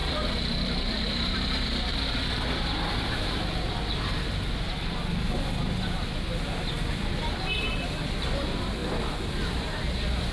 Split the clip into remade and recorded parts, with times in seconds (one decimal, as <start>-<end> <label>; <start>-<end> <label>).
0.0-3.4 remade; 3.4-10.3 recorded